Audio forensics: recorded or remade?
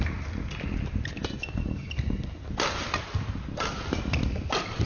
recorded